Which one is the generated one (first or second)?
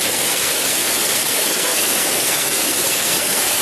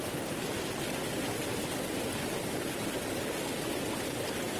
first